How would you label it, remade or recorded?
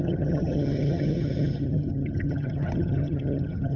remade